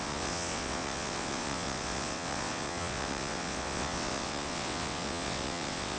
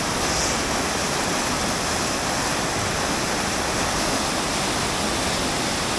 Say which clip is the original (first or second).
second